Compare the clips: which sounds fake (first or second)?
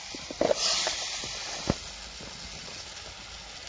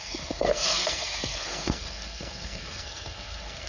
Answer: second